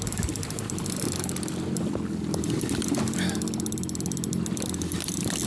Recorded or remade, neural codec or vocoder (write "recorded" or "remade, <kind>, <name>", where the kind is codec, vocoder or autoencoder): recorded